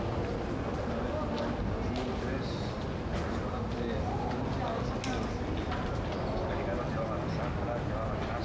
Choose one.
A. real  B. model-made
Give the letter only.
A